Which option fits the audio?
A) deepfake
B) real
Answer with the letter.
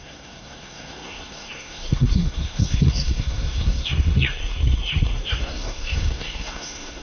A